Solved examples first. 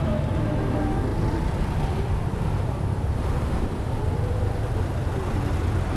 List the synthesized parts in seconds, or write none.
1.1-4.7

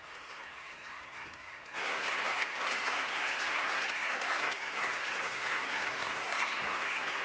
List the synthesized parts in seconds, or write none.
0.0-7.2

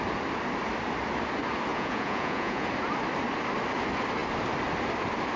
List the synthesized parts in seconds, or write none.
1.7-2.7

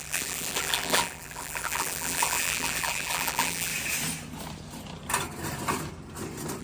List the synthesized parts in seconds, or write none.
0.0-3.7

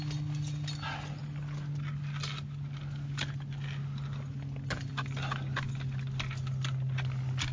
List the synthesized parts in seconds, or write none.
none

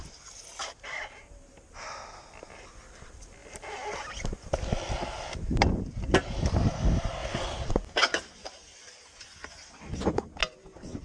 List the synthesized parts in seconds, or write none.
none

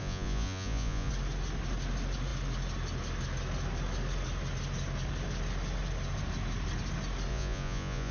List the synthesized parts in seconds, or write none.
0.0-1.1; 7.3-8.1

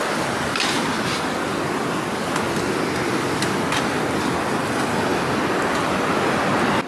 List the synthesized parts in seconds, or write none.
none